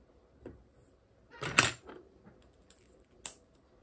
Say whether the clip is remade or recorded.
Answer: recorded